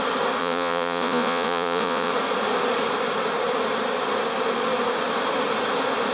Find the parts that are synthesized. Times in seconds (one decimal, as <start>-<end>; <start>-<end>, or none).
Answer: 0.4-2.1

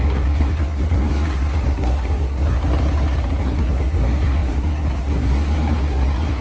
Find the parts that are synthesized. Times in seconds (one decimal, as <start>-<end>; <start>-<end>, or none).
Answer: 0.0-2.6; 3.4-6.4

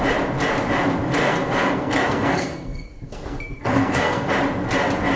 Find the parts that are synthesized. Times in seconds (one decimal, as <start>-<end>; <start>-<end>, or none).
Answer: 1.2-4.3